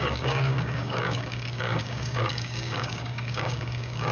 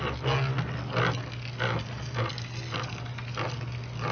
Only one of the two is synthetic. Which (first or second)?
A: first